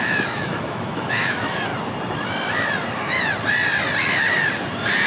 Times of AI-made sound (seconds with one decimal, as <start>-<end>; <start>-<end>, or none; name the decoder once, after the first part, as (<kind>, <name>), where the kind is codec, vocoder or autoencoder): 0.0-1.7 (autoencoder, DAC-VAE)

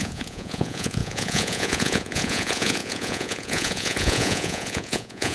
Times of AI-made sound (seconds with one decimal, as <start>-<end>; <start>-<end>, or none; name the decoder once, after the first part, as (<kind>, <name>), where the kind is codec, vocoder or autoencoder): 0.0-5.3 (vocoder, Vocos)

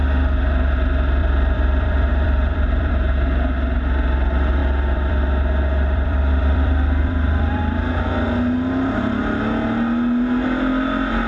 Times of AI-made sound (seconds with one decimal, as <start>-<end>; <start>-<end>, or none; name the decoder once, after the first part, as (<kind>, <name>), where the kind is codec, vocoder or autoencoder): 1.2-2.9 (vocoder, BigVGAN v2); 4.6-7.6

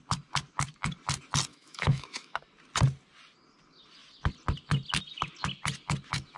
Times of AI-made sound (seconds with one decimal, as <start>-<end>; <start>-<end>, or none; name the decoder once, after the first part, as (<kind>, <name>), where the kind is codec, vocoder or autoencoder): 1.5-2.4 (autoencoder, DAC-VAE)